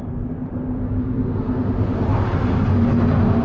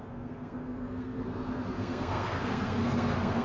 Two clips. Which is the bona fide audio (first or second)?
first